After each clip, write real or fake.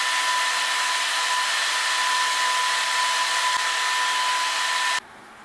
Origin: real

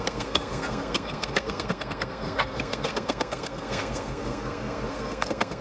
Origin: fake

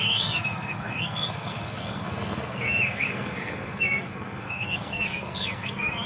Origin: fake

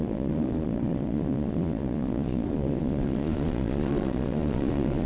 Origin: fake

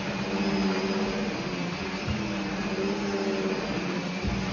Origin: real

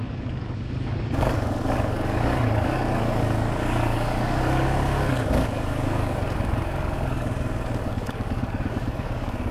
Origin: fake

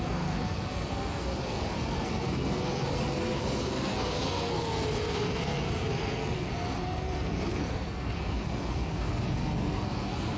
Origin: fake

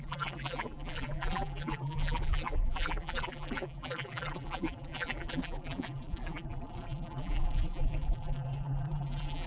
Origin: fake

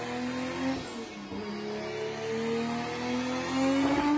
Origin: real